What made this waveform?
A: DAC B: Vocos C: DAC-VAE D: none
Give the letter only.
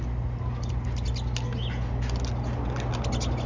D